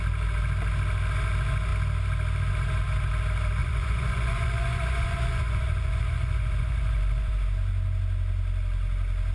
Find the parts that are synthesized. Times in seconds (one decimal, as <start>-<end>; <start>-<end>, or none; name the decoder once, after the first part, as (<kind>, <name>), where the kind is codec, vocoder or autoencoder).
3.6-7.3 (vocoder, Vocos)